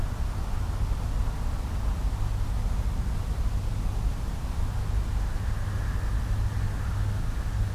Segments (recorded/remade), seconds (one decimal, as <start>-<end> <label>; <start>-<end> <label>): 0.0-7.7 recorded